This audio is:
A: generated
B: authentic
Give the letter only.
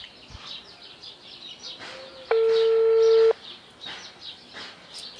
B